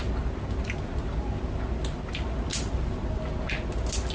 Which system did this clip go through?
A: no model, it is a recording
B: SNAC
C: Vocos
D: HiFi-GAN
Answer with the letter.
A